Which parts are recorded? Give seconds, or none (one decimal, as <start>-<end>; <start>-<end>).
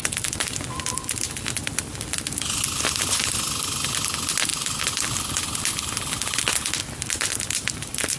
0.0-8.2